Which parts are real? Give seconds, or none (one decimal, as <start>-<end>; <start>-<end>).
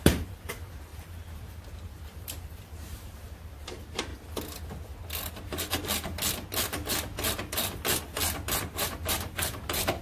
4.1-8.6